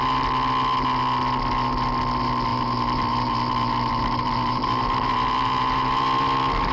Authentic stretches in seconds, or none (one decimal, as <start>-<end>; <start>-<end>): 0.0-2.5